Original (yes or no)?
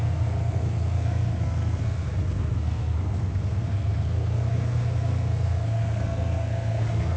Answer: no